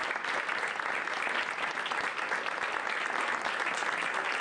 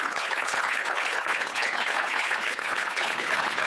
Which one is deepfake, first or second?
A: second